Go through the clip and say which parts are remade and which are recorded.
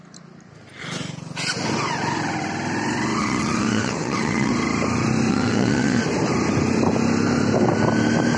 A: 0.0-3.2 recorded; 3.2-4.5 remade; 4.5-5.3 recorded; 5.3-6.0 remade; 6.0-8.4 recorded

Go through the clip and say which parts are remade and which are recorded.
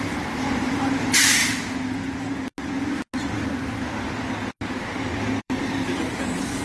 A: 0.0-1.4 remade; 1.4-5.4 recorded; 5.4-6.6 remade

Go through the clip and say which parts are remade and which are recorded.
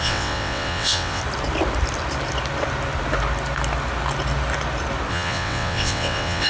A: 0.0-1.2 remade; 1.2-5.1 recorded; 5.1-6.5 remade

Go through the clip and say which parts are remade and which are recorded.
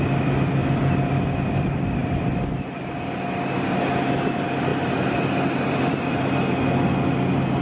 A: 0.0-2.0 recorded; 2.0-3.0 remade; 3.0-7.6 recorded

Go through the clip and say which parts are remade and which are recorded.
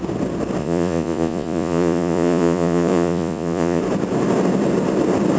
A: 0.0-0.6 recorded; 0.6-3.8 remade; 3.8-5.4 recorded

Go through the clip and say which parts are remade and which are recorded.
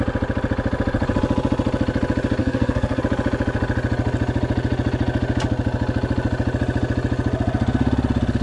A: 0.0-2.4 recorded; 2.4-3.0 remade; 3.0-8.4 recorded